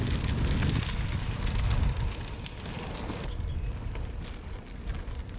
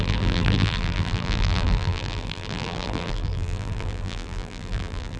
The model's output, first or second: second